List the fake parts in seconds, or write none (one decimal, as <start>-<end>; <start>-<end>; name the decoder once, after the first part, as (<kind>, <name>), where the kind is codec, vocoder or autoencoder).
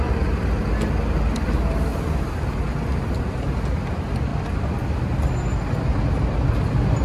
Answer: none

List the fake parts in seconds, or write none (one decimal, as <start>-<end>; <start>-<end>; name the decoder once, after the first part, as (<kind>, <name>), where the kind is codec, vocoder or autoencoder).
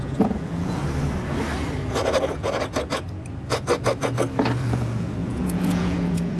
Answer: 0.0-0.8 (vocoder, Vocos); 4.6-6.4